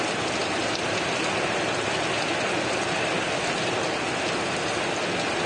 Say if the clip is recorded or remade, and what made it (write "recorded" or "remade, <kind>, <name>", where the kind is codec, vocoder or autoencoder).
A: recorded